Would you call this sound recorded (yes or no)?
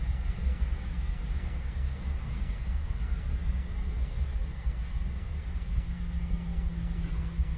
no